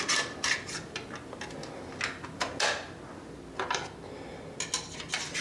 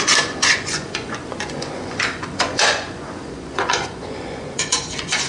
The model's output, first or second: second